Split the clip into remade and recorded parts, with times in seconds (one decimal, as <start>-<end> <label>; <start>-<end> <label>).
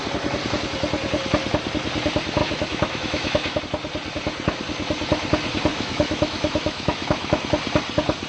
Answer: 0.0-2.4 recorded; 2.4-3.6 remade; 3.6-5.7 recorded; 5.7-7.4 remade; 7.4-8.3 recorded